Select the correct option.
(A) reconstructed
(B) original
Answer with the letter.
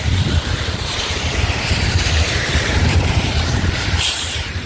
A